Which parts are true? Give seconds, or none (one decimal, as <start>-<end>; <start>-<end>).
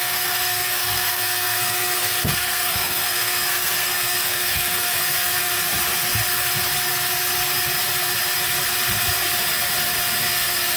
5.6-10.3